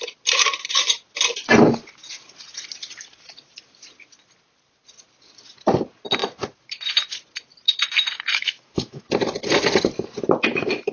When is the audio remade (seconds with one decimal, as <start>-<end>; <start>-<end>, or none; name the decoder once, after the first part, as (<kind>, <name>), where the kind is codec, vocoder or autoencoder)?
8.3-9.0 (autoencoder, DAC-VAE)